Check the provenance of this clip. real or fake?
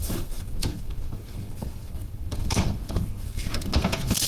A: fake